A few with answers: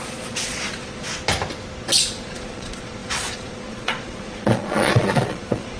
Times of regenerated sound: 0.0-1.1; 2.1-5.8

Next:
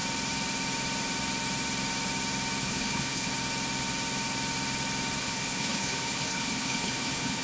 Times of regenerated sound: 2.6-3.3; 5.2-7.4